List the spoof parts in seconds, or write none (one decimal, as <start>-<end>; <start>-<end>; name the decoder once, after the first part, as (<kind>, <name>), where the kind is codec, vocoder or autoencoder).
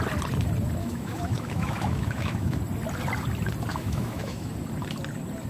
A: 0.8-2.6 (autoencoder, DAC-VAE); 3.7-4.5